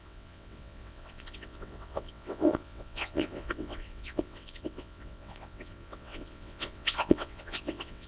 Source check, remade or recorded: remade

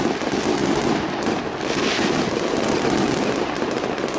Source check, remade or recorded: recorded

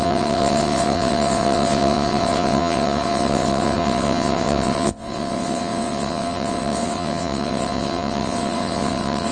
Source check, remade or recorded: remade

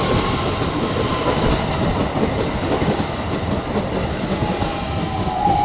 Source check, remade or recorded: recorded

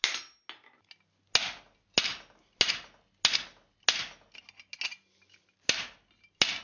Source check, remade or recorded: recorded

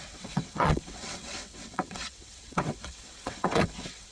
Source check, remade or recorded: remade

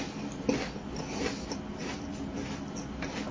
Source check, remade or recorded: recorded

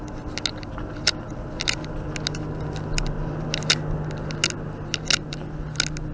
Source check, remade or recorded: recorded